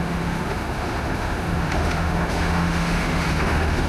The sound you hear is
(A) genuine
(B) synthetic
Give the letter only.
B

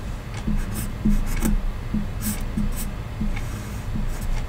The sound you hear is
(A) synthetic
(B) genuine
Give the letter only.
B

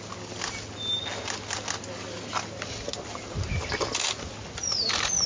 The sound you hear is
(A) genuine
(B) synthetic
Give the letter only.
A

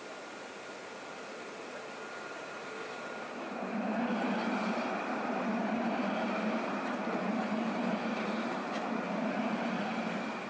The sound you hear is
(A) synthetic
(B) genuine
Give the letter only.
B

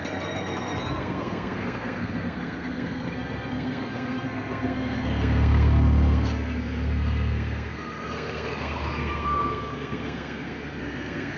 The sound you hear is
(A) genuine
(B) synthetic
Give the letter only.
B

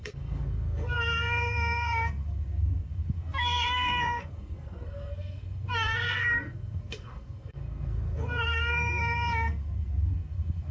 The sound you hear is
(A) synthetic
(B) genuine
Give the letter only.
A